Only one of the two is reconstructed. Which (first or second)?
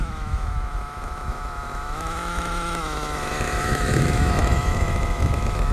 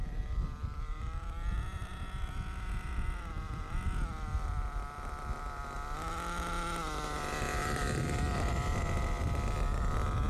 first